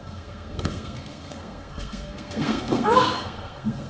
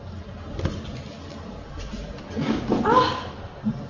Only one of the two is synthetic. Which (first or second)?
first